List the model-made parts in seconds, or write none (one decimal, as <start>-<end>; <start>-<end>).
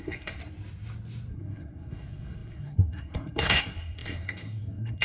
0.0-0.4; 1.3-5.0